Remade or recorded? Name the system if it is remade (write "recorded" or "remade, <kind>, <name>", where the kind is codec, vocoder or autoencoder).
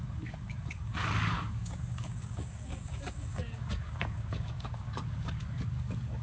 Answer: remade, codec, DAC